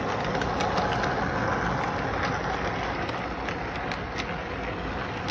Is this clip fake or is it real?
real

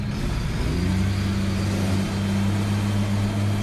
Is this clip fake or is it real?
real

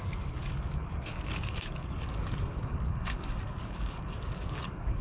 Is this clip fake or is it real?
fake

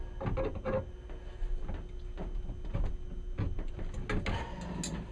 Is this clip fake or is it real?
real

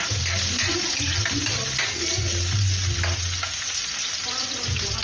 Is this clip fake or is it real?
real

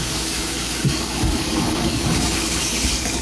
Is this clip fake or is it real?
fake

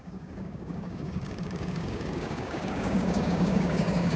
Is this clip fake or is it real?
fake